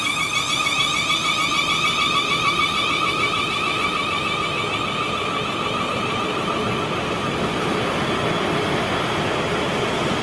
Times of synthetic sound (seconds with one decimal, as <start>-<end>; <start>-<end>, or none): 7.7-9.7